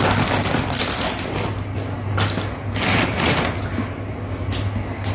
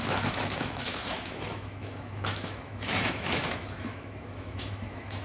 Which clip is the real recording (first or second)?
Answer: first